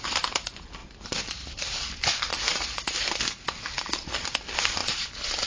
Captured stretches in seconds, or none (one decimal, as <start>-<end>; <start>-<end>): 0.0-0.8; 3.1-4.8

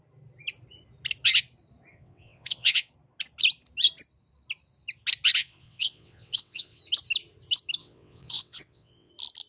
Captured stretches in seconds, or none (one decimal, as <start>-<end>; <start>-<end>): 0.0-1.9; 2.9-5.4; 6.8-7.8; 9.1-9.5

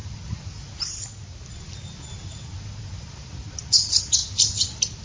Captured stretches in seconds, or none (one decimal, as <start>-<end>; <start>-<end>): 0.0-5.0

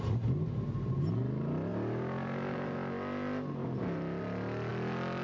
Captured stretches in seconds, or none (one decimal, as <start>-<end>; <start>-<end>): 0.0-5.2

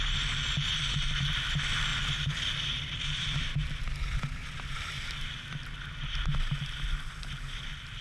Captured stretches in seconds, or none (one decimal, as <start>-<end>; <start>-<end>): 0.0-1.9; 3.6-8.0